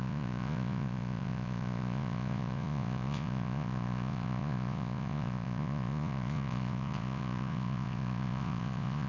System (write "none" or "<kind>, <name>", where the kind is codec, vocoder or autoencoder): vocoder, Vocos